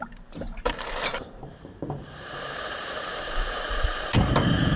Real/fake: fake